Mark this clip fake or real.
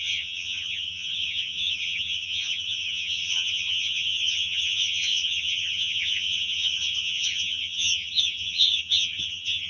fake